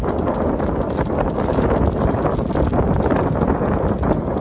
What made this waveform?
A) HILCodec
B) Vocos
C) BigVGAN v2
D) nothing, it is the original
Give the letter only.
D